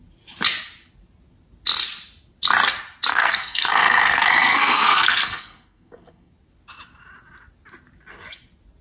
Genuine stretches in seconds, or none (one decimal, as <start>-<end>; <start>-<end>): 0.0-3.1; 6.3-8.8